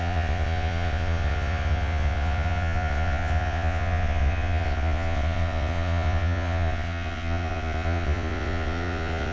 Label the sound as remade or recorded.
remade